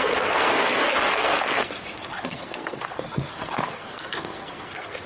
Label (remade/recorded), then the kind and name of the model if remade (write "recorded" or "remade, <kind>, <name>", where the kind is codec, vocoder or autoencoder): remade, codec, SNAC